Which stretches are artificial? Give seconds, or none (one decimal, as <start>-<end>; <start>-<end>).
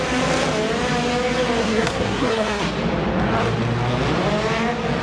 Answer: 1.6-2.7